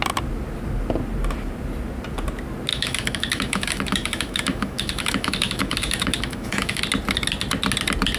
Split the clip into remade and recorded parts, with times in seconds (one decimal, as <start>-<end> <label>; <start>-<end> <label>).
0.0-2.7 recorded; 2.7-6.8 remade; 6.8-8.2 recorded